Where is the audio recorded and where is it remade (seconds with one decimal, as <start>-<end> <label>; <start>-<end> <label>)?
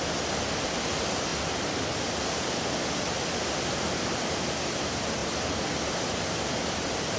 0.0-7.2 recorded